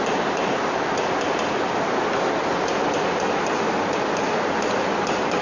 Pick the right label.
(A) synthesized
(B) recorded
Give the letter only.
B